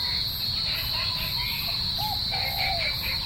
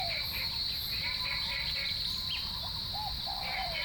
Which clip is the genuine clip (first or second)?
first